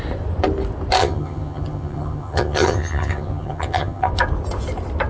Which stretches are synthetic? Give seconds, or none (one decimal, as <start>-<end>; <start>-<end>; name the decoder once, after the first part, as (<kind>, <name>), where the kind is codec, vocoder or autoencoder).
1.0-4.1 (vocoder, HiFi-GAN)